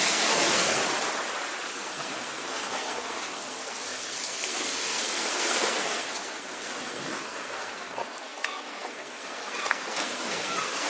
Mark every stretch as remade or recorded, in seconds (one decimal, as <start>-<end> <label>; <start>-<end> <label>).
0.0-0.8 remade; 0.8-1.7 recorded; 1.7-10.9 remade